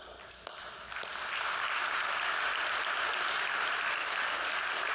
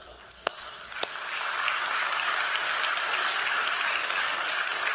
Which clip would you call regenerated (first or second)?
second